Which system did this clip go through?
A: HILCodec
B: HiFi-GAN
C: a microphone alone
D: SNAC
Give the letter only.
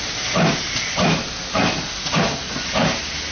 C